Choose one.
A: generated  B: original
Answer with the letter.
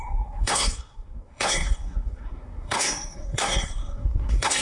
A